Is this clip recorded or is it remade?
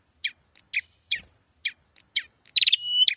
recorded